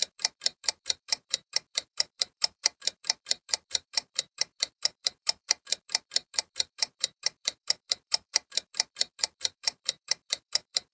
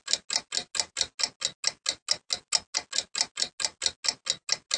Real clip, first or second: second